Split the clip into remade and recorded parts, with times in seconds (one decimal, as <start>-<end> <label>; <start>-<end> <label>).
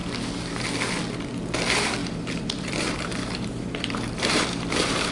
0.0-2.0 recorded; 2.0-5.1 remade